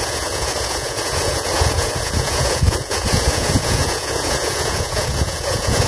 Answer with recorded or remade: remade